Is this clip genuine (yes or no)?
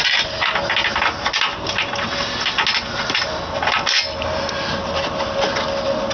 yes